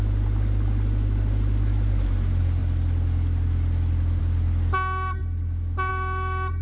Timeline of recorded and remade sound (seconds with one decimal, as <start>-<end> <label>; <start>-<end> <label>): 0.0-6.6 recorded